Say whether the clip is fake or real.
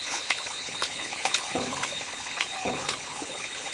fake